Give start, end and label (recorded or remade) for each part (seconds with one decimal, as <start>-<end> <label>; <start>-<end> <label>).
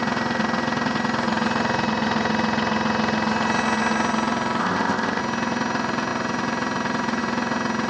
0.0-4.6 recorded; 4.6-5.2 remade; 5.2-7.9 recorded